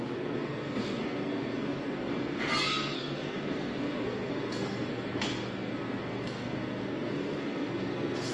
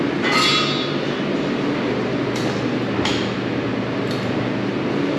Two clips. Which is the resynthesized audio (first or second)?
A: first